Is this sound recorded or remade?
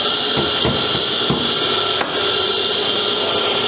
recorded